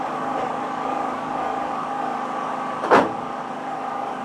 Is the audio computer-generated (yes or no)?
yes